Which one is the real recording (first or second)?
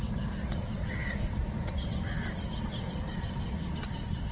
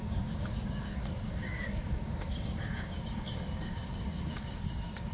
first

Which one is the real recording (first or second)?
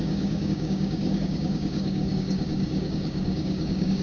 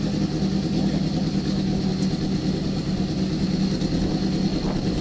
second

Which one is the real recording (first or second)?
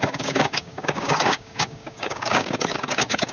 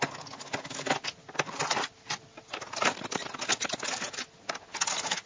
second